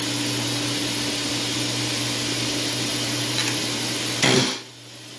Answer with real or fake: real